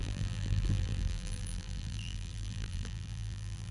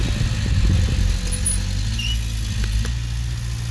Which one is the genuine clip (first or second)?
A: second